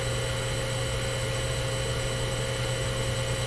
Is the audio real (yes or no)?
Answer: yes